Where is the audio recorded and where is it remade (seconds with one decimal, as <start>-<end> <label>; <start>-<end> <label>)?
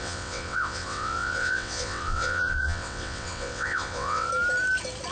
0.0-4.3 remade; 4.3-5.1 recorded